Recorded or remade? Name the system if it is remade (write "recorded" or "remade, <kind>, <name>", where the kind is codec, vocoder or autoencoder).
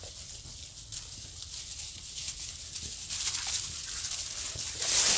recorded